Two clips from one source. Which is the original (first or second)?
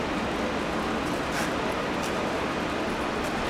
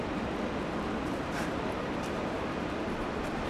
first